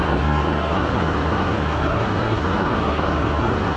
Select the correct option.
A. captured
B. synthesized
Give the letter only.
B